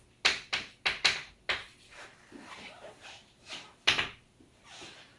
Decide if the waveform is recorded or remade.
recorded